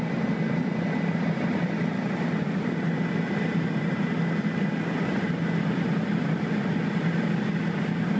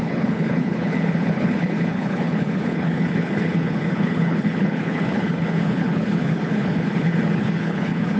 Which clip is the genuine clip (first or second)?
first